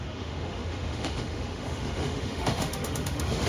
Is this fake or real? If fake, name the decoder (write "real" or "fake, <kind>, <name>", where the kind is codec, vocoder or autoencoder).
fake, autoencoder, DAC-VAE